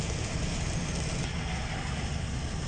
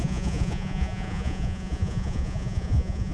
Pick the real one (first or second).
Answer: first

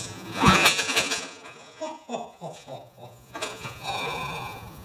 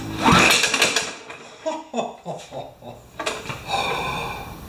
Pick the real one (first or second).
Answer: second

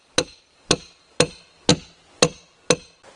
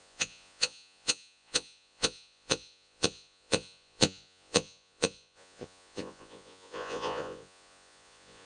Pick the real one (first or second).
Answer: first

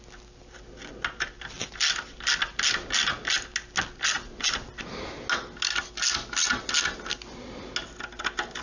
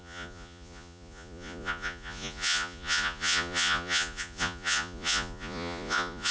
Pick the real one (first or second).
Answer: first